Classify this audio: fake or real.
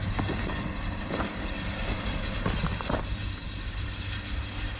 real